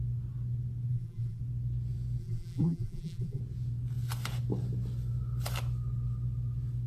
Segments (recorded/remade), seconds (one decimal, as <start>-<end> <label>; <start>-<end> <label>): 0.0-0.9 recorded; 0.9-1.4 remade; 1.4-2.2 recorded; 2.2-3.4 remade; 3.4-6.9 recorded